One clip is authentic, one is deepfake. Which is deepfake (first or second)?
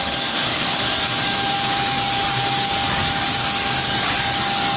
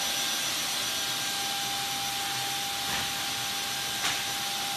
first